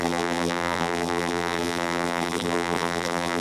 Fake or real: fake